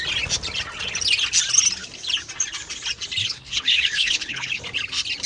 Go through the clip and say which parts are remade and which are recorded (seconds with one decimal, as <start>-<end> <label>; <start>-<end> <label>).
0.0-3.2 recorded; 3.2-4.6 remade; 4.6-5.3 recorded

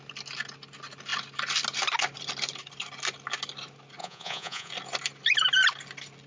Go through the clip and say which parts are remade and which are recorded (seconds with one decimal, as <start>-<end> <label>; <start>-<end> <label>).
0.0-4.0 recorded; 4.0-4.7 remade; 4.7-6.3 recorded

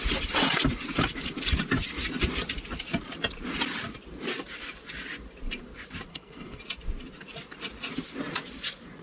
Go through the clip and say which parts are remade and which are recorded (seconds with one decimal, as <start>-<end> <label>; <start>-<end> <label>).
0.0-6.1 recorded; 6.1-6.6 remade; 6.6-9.0 recorded

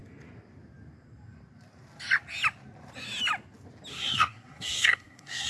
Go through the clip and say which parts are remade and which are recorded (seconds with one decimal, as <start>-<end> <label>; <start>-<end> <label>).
0.0-3.9 recorded; 3.9-5.5 remade